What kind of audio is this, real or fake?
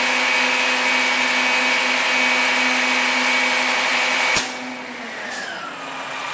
real